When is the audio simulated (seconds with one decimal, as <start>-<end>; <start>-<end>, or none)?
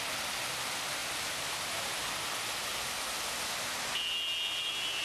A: none